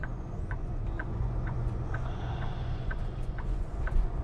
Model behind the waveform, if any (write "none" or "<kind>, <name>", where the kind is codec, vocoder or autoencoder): vocoder, Vocos